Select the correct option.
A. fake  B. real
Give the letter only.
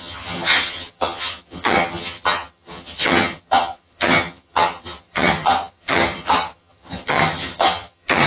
A